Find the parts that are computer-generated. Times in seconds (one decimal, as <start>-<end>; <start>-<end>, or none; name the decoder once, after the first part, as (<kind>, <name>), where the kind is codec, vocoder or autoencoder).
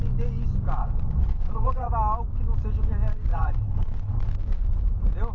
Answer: 0.8-1.9 (vocoder, WaveNeXt); 3.3-4.3